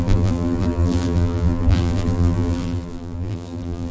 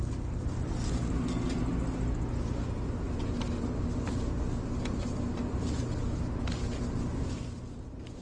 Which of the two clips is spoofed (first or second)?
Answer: first